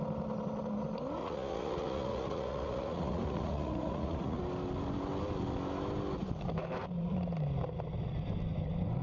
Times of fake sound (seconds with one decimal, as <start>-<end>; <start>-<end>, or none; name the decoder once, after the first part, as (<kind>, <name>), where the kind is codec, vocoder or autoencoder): 1.2-4.4 (vocoder, Vocos)